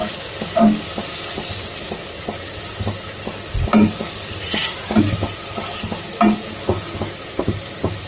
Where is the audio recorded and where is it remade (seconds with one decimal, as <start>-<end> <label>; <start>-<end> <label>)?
0.0-8.1 recorded